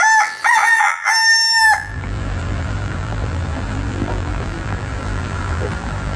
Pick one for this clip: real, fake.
fake